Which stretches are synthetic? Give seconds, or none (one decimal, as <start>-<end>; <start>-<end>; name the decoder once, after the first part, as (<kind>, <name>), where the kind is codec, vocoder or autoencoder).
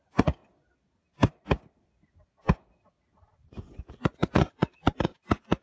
0.0-0.4 (vocoder, Vocos); 3.8-5.6